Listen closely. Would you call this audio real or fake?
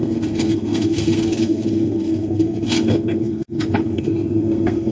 fake